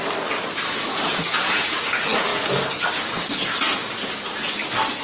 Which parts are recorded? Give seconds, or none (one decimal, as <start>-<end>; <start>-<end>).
0.0-0.9; 1.8-5.0